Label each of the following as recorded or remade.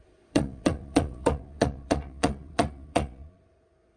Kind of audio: remade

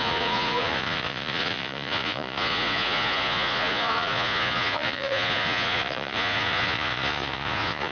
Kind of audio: remade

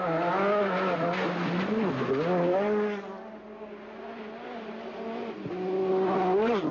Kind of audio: recorded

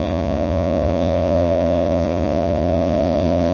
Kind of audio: remade